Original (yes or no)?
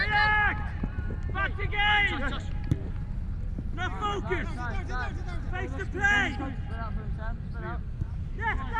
yes